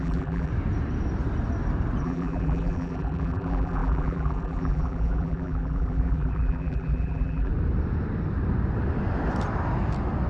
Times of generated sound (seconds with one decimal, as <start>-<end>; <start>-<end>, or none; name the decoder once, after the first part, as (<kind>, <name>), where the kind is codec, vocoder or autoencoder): 0.0-0.5 (vocoder, BigVGAN v2); 2.0-7.5